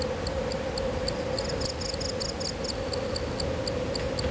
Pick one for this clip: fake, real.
real